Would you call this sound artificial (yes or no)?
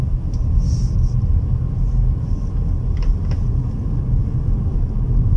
no